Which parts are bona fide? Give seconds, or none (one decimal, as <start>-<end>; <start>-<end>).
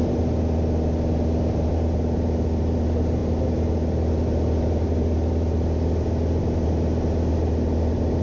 0.0-8.2